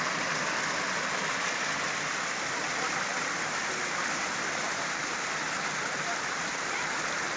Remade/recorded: recorded